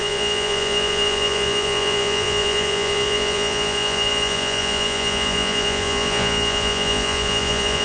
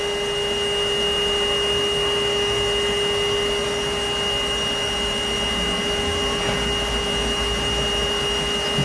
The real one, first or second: second